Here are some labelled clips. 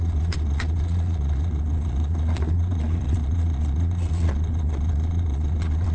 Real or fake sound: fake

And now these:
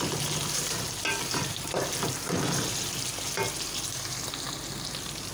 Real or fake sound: real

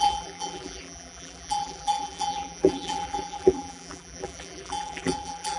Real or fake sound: fake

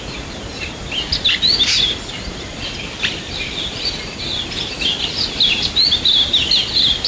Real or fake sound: real